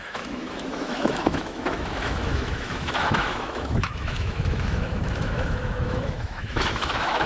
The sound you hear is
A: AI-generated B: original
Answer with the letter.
A